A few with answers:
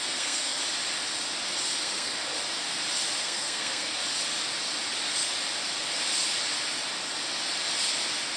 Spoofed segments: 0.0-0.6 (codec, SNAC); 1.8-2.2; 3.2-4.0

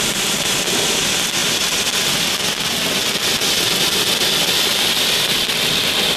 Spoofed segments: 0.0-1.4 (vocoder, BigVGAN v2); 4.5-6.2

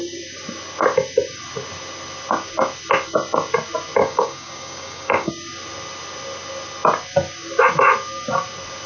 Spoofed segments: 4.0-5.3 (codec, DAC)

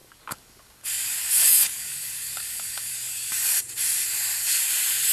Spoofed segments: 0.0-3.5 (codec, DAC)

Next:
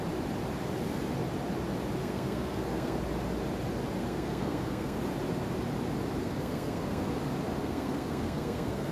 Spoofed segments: 2.0-3.0 (codec, SNAC); 4.0-5.0; 6.2-7.1; 7.6-8.9

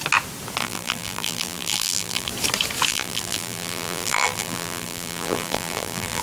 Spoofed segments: 0.6-2.3 (vocoder, BigVGAN v2); 2.9-6.2

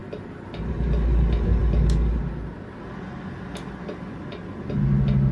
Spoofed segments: 0.0-0.7 (vocoder, BigVGAN v2)

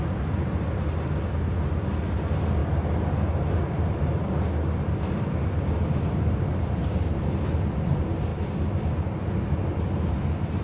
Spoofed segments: none